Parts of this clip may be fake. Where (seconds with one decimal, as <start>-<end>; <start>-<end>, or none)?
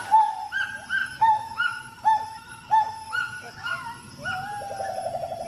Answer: 1.0-4.1